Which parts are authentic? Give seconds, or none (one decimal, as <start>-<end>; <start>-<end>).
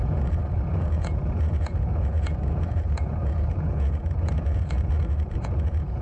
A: none